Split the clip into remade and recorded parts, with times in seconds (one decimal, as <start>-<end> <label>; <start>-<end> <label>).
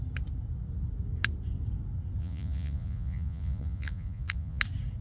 0.0-2.2 recorded; 2.2-4.6 remade; 4.6-5.0 recorded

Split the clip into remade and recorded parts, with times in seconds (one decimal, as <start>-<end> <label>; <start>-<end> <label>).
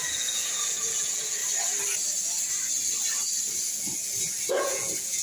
0.0-1.4 remade; 1.4-4.5 recorded; 4.5-5.2 remade